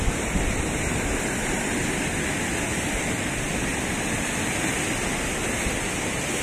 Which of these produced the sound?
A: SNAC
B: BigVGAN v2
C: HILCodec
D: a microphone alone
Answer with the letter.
D